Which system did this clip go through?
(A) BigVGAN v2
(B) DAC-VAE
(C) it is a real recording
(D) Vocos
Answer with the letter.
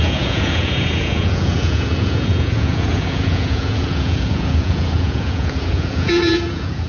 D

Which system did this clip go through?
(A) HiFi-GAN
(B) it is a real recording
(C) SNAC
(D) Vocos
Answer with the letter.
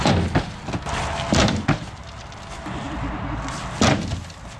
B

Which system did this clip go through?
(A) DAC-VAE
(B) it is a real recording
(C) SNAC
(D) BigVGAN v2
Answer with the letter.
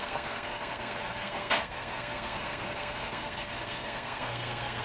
C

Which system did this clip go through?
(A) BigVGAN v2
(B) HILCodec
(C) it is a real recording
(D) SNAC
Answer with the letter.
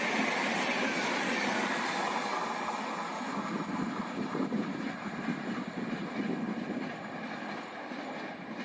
C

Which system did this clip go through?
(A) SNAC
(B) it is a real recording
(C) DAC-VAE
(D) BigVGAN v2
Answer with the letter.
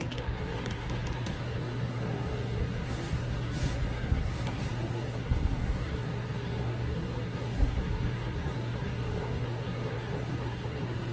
A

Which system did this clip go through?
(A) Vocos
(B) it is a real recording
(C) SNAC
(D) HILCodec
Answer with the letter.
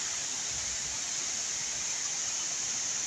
B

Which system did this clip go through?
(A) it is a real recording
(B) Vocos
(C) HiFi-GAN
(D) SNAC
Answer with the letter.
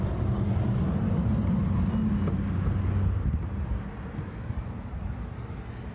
A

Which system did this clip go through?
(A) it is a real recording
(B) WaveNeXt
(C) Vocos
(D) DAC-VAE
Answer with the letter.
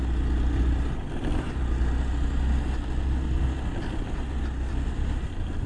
A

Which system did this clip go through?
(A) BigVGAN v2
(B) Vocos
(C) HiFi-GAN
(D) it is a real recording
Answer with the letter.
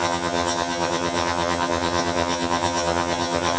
C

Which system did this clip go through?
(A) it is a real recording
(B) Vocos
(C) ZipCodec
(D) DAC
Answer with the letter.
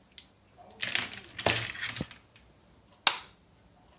A